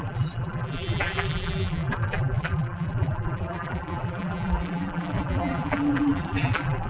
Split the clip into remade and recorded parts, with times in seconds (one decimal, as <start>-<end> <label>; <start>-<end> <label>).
0.0-6.9 remade

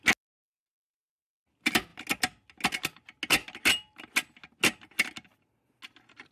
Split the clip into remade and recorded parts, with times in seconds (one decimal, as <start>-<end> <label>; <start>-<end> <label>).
0.0-6.3 recorded

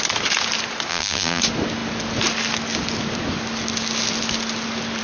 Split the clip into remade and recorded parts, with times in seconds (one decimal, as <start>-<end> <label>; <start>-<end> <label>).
0.0-0.9 recorded; 0.9-1.4 remade; 1.4-5.0 recorded

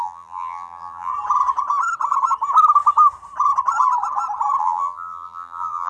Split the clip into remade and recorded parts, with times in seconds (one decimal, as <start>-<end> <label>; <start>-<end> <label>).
0.0-1.1 remade; 1.1-4.6 recorded; 4.6-5.9 remade